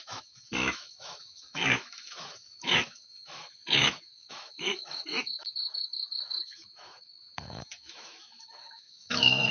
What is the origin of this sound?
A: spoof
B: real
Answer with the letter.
A